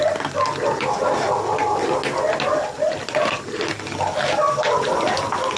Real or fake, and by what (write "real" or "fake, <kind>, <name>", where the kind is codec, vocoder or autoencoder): real